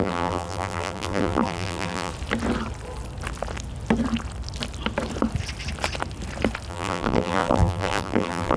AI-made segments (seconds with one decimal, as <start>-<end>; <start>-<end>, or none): 0.0-2.1; 6.7-8.6